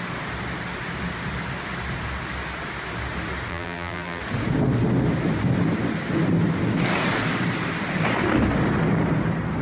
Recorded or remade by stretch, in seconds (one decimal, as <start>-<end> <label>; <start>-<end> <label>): 0.0-3.5 recorded; 3.5-4.2 remade; 4.2-9.6 recorded